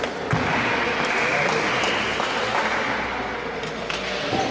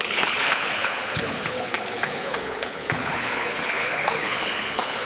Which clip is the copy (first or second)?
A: second